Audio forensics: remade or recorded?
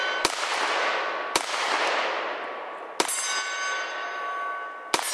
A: recorded